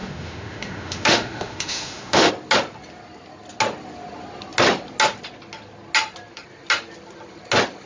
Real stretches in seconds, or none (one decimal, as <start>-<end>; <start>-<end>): 2.3-7.9